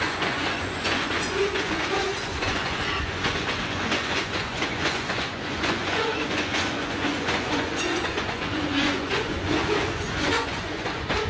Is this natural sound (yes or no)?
no